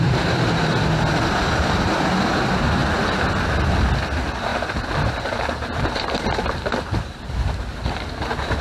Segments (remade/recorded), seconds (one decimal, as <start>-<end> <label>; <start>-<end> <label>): 0.0-2.8 recorded; 2.8-3.4 remade; 3.4-4.5 recorded; 4.5-7.2 remade; 7.2-8.6 recorded